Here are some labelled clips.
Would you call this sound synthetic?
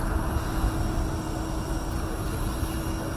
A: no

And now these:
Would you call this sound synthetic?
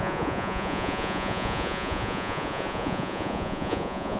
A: yes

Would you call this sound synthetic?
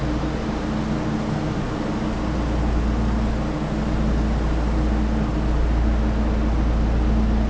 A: no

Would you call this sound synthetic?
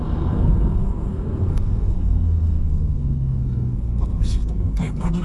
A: yes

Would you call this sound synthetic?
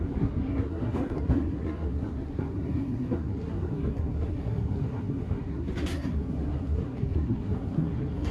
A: yes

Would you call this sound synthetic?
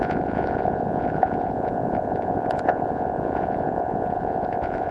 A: yes